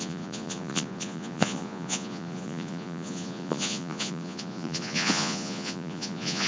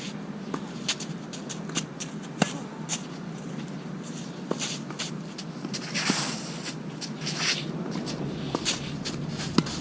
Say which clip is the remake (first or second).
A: first